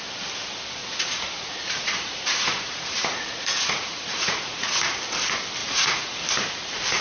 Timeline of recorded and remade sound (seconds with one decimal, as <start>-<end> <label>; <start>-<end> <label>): 0.0-0.8 recorded; 0.8-5.0 remade; 5.0-5.6 recorded; 5.6-6.2 remade; 6.2-7.0 recorded